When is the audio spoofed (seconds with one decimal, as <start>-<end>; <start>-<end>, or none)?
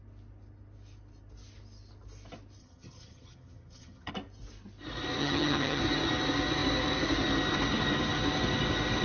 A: 2.6-4.1; 5.2-5.8